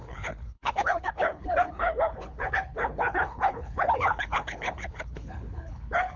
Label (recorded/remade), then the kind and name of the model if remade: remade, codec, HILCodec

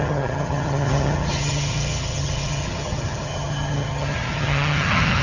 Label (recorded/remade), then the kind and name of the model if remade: remade, vocoder, HiFi-GAN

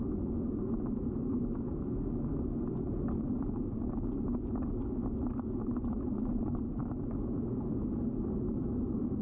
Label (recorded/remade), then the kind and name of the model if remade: recorded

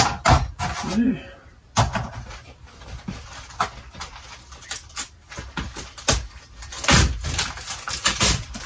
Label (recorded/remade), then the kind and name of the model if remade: recorded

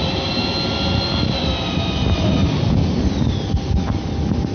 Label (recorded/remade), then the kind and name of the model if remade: recorded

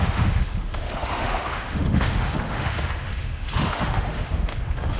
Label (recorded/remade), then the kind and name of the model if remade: remade, autoencoder, DAC-VAE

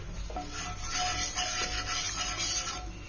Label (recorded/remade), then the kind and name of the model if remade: recorded